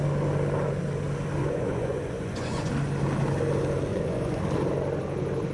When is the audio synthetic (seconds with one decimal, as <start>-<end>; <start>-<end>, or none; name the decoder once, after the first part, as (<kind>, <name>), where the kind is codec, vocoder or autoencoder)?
1.4-2.7 (vocoder, Vocos); 3.9-4.4